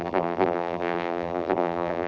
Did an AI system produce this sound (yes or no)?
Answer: yes